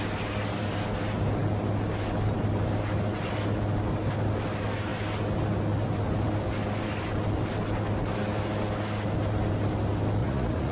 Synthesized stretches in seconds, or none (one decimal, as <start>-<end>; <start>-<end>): 10.2-10.7